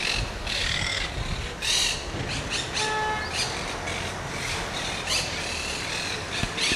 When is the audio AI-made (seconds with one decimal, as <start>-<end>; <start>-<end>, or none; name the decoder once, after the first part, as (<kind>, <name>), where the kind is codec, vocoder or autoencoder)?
0.4-1.1 (codec, DAC)

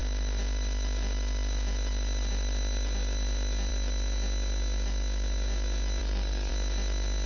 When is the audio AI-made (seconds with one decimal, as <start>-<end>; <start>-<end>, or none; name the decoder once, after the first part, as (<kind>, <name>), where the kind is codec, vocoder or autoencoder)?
6.0-6.5 (codec, DAC)